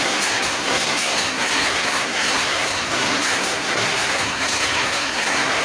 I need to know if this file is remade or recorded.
remade